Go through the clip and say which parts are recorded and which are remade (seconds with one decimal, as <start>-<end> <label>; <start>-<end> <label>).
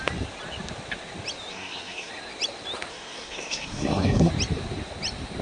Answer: 0.0-1.5 recorded; 1.5-2.1 remade; 2.1-2.9 recorded; 2.9-4.3 remade; 4.3-5.4 recorded